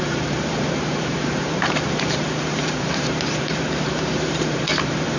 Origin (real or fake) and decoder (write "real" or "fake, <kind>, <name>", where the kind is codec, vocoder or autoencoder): fake, vocoder, BigVGAN v2